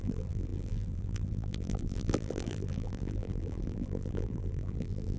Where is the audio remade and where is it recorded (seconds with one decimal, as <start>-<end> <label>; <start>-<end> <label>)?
0.0-5.2 remade